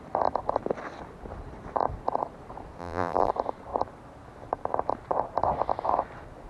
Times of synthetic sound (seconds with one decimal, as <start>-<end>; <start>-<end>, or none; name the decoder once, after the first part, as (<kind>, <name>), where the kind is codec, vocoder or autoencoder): 2.8-3.3 (vocoder, BigVGAN v2)